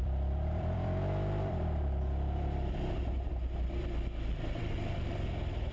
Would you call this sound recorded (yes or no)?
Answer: no